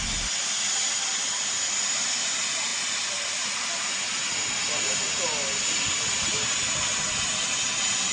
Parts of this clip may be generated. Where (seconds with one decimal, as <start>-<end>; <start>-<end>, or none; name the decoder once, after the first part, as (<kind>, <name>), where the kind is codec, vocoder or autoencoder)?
none